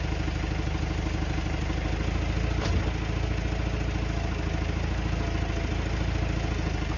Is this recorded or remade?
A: recorded